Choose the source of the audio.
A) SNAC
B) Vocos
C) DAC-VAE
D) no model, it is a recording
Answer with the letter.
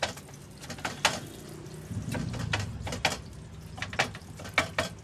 D